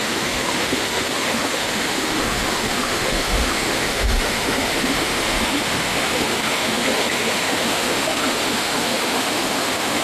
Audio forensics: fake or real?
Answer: fake